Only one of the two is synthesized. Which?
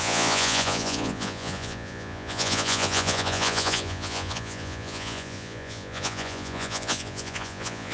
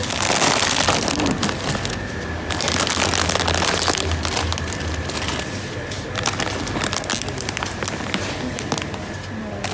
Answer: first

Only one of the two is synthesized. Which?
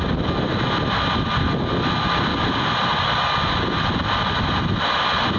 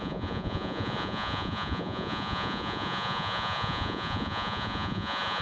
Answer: second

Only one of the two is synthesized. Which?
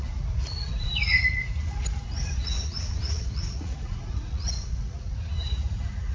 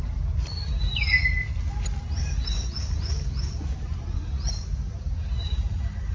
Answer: first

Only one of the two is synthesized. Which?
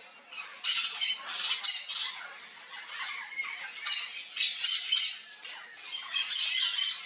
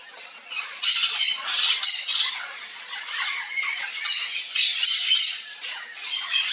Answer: second